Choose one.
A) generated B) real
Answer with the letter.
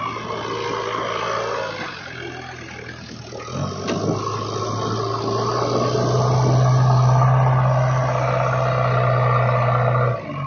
B